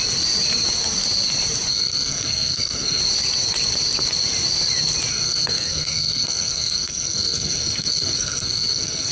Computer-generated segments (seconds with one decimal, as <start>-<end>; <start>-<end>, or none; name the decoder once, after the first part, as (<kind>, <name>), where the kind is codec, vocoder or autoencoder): 1.7-3.0 (codec, SNAC); 5.1-9.1